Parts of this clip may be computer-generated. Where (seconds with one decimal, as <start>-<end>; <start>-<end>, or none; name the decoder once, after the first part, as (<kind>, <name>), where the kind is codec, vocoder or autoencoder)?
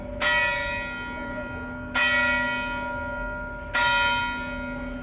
none